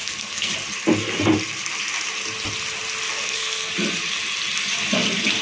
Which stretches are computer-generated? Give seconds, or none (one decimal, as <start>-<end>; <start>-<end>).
0.0-0.5; 3.1-3.7